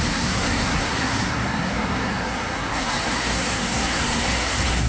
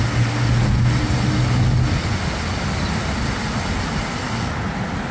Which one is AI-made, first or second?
first